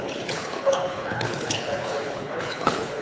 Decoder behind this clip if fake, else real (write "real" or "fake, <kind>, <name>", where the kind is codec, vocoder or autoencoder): fake, codec, HILCodec